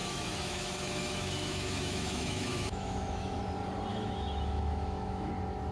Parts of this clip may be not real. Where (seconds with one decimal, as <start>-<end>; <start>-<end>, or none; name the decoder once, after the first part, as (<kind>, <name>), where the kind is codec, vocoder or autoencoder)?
0.0-3.4 (autoencoder, DAC-VAE); 3.9-5.3